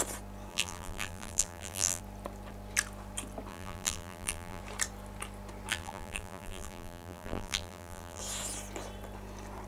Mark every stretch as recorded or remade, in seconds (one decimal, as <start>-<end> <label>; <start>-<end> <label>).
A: 0.0-0.5 recorded; 0.5-2.0 remade; 2.0-3.5 recorded; 3.5-4.6 remade; 4.6-5.7 recorded; 5.7-8.2 remade; 8.2-9.7 recorded